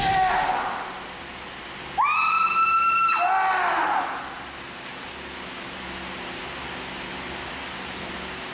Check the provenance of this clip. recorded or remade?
recorded